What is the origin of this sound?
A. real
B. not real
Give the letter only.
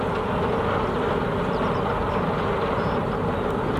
A